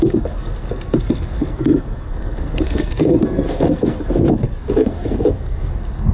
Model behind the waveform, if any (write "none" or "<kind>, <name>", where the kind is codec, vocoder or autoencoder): codec, SNAC